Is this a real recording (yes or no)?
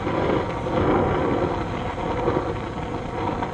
yes